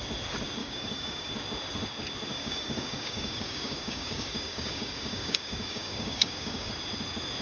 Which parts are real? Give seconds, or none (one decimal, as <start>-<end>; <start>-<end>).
0.0-0.6; 1.3-2.3; 6.7-7.4